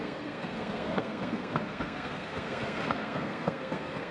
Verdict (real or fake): fake